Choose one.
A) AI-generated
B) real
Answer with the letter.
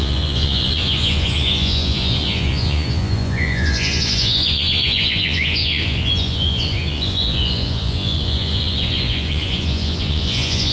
A